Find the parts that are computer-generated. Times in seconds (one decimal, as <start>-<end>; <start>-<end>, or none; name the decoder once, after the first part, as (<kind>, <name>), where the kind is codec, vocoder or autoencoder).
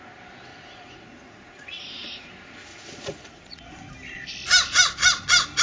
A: 0.5-2.3 (vocoder, Vocos); 2.7-3.6